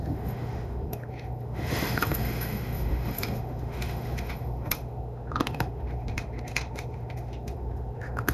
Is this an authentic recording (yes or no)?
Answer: no